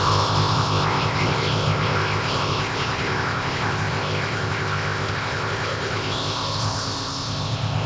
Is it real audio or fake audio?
fake